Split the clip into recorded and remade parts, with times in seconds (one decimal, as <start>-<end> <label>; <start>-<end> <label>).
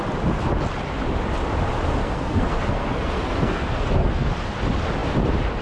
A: 0.0-2.0 recorded; 2.0-4.3 remade; 4.3-5.6 recorded